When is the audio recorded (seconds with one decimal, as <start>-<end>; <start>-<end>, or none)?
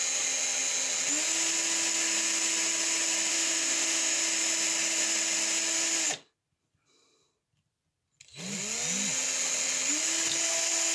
0.0-3.3; 4.2-10.9